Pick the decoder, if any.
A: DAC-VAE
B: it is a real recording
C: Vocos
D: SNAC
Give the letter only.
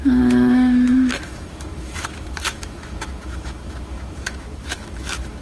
A